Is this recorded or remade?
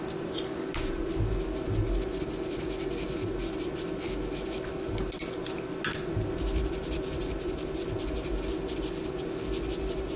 recorded